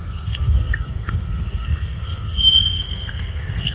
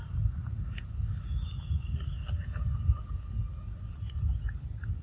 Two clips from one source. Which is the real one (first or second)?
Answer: second